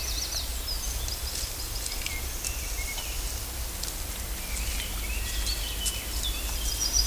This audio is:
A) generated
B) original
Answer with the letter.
B